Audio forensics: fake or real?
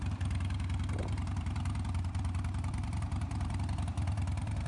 fake